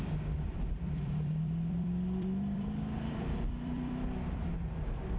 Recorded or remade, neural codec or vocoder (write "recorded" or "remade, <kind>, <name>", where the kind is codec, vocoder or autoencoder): remade, vocoder, BigVGAN v2